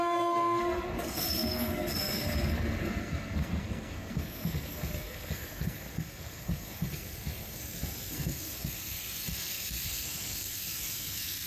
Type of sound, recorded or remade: remade